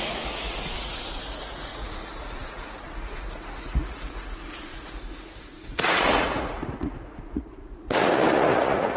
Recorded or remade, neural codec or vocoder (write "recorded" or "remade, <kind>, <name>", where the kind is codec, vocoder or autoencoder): remade, vocoder, Vocos